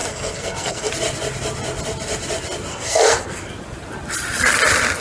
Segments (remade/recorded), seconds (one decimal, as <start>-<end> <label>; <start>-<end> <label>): 0.0-0.9 remade; 0.9-2.7 recorded; 2.7-3.5 remade; 3.5-5.0 recorded